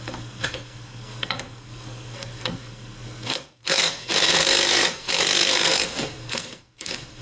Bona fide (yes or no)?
no